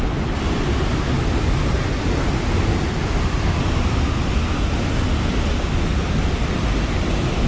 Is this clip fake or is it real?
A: real